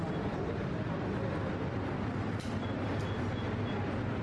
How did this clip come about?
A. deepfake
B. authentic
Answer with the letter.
B